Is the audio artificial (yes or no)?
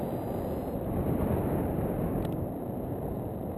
no